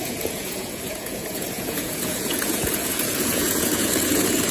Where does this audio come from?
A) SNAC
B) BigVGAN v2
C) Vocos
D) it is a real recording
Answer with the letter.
C